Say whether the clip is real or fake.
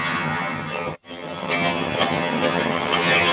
fake